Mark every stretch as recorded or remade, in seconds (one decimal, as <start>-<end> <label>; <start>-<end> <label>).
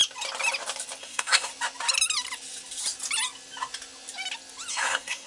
0.0-1.0 recorded; 1.0-1.5 remade; 1.5-4.7 recorded; 4.7-5.3 remade